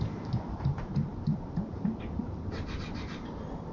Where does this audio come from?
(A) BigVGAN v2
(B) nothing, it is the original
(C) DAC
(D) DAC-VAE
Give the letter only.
A